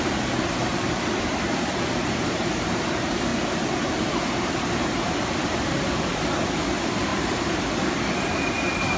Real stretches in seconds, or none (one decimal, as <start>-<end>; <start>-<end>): 0.0-0.7; 2.8-3.3; 6.3-7.1; 7.6-9.0